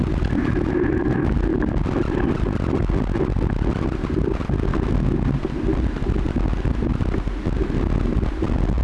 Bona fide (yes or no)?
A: yes